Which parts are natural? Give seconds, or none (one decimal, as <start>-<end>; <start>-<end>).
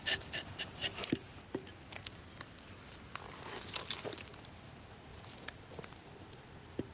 2.1-4.6; 5.1-5.9